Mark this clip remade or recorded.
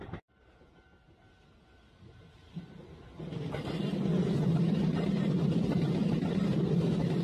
recorded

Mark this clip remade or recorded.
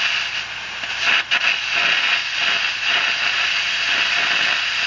recorded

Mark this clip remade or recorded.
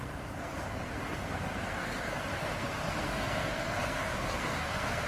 remade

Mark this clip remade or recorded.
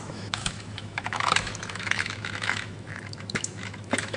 remade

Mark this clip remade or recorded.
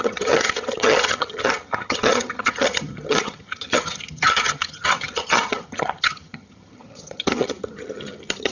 remade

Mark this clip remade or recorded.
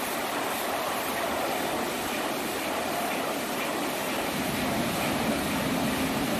recorded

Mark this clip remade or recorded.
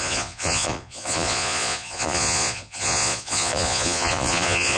remade